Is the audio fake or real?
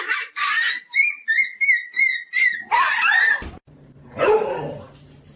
fake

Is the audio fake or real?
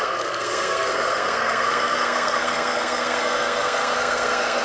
fake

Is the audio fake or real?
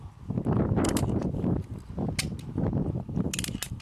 real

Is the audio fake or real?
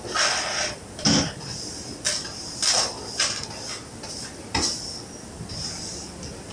real